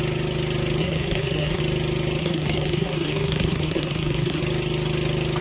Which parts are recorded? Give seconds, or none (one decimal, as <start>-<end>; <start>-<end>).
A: 0.0-0.8; 1.6-2.2; 4.4-5.4